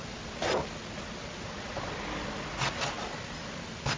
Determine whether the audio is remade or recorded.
recorded